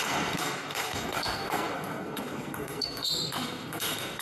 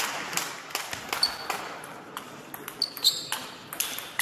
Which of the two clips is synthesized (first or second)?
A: first